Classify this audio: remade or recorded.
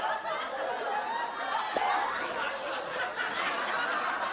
recorded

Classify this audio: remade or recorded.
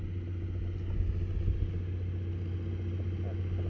recorded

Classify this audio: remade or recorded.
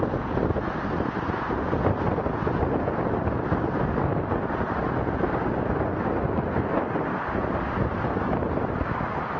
recorded